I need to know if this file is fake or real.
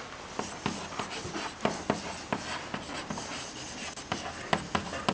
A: real